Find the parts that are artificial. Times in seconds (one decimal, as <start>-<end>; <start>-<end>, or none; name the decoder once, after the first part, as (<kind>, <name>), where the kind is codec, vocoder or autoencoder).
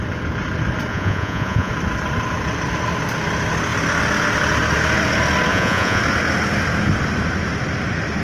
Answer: 0.9-1.7 (vocoder, Vocos); 5.5-6.0